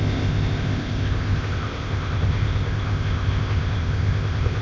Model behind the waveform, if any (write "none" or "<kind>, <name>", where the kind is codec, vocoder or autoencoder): codec, ZipCodec